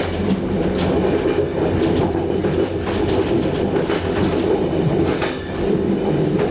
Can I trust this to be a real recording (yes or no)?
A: yes